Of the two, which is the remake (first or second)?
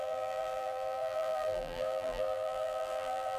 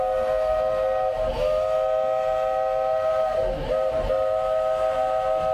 first